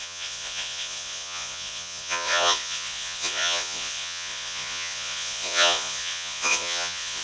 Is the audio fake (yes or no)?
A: yes